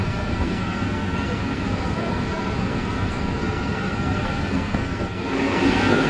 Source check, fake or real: fake